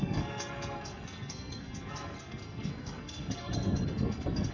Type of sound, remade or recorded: remade